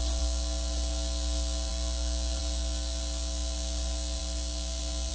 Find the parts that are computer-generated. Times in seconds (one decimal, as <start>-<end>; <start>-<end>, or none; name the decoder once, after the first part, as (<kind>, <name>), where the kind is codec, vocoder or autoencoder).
none